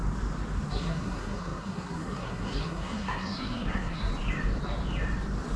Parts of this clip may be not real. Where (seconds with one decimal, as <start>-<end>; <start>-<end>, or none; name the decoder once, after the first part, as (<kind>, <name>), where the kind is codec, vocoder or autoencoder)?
0.7-4.1 (codec, SNAC)